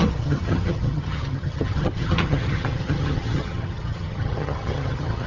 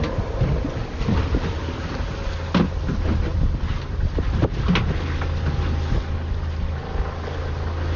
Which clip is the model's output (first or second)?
first